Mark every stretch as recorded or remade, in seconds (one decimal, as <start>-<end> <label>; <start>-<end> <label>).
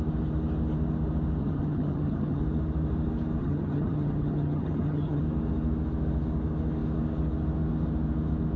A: 0.0-1.4 recorded; 1.4-2.4 remade; 2.4-3.4 recorded; 3.4-5.2 remade; 5.2-8.6 recorded